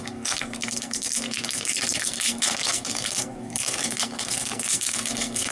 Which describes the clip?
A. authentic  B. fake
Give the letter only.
B